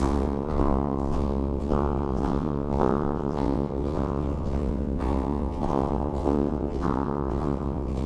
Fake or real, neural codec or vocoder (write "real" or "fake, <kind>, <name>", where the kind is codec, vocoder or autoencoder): fake, vocoder, WaveNeXt